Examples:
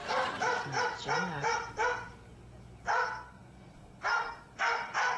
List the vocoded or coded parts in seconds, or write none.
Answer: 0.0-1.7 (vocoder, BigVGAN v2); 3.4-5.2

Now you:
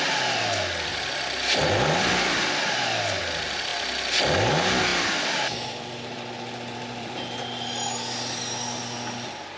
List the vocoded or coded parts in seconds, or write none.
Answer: 0.9-3.2 (vocoder, BigVGAN v2); 4.9-7.7

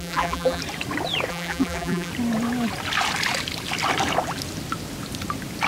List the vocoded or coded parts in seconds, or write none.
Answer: 0.0-0.6 (vocoder, BigVGAN v2); 1.3-2.1